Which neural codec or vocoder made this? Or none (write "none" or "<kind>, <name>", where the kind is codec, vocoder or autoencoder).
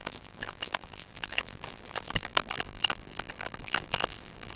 vocoder, BigVGAN v2